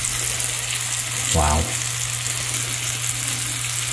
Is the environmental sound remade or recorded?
recorded